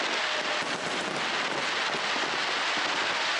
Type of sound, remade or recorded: recorded